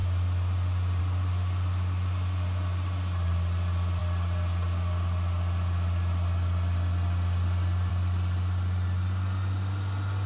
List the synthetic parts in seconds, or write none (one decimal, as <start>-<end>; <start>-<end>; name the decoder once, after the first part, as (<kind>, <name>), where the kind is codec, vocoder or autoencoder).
none